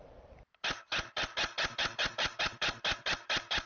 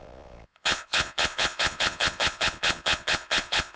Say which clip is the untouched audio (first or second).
first